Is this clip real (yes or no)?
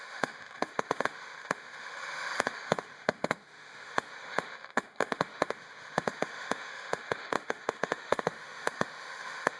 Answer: no